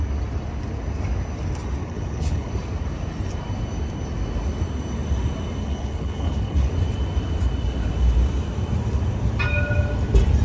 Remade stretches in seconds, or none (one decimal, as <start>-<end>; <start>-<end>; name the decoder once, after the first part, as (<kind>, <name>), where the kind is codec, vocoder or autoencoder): 1.8-2.5 (codec, HILCodec); 5.6-6.7